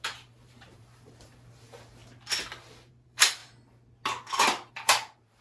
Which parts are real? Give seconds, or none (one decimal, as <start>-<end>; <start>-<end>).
2.0-2.9; 3.4-4.7